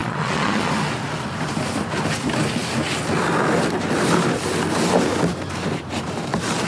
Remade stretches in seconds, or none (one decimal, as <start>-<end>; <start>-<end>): 0.0-0.7